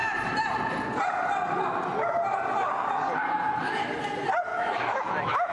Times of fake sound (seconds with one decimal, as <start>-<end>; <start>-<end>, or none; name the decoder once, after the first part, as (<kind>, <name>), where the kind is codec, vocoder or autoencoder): 4.5-5.5 (autoencoder, DAC-VAE)